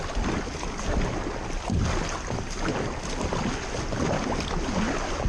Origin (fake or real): real